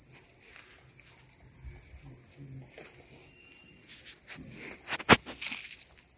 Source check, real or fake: real